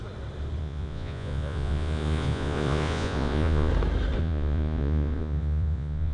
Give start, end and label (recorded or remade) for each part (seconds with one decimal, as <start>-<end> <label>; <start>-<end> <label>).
0.0-0.6 recorded; 0.6-3.7 remade; 3.7-4.2 recorded; 4.2-6.1 remade